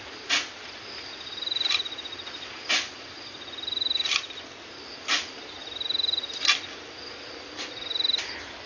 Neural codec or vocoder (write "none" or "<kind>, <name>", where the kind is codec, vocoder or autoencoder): none